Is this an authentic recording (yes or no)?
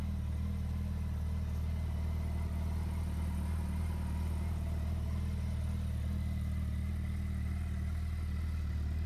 yes